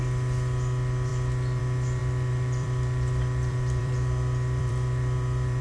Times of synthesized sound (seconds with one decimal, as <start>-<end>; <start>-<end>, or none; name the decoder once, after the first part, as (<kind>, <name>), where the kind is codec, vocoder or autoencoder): 2.0-5.6 (vocoder, BigVGAN v2)